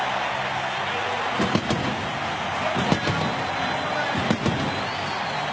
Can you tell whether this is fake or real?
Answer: real